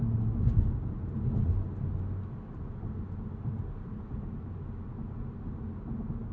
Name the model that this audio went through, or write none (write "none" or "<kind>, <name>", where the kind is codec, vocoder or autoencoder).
none